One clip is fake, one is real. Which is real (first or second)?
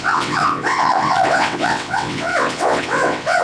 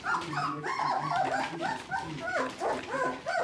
second